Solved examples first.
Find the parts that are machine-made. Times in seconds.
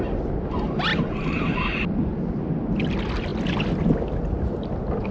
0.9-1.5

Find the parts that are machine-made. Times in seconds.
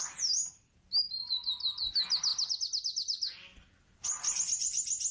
none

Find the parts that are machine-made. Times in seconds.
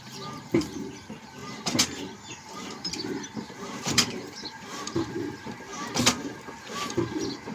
0.0-5.7; 6.6-7.5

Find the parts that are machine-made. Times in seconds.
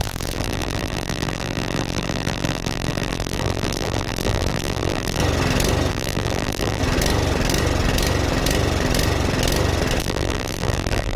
0.0-5.2; 5.9-6.8; 10.0-11.2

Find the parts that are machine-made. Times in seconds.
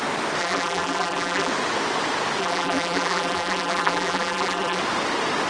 0.4-1.5; 2.4-4.8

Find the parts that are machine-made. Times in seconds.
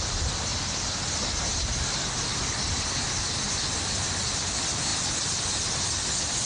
none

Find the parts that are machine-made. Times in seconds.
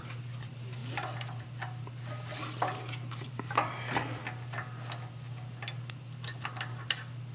none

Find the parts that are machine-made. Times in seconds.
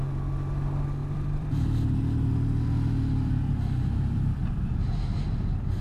1.0-1.8